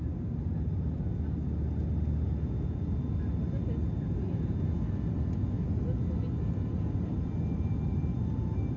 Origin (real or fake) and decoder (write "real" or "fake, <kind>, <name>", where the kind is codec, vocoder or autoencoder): real